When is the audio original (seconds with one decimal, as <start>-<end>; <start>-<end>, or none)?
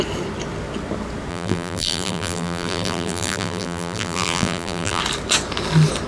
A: 0.0-1.3; 5.0-6.1